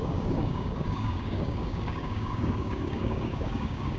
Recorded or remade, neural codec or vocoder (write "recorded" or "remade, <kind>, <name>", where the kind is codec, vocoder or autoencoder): remade, codec, DAC